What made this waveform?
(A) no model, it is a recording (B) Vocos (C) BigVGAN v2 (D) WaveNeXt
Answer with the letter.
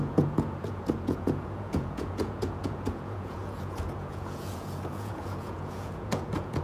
B